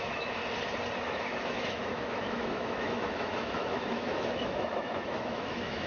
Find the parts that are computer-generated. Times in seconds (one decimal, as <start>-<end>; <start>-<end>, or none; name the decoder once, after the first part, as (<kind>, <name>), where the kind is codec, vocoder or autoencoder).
0.0-0.4 (autoencoder, DAC-VAE); 1.0-5.9